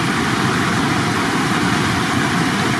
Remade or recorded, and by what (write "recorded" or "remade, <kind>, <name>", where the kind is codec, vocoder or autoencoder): recorded